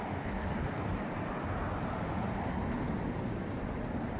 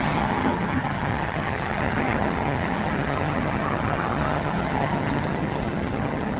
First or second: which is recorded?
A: first